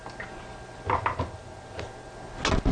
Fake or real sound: real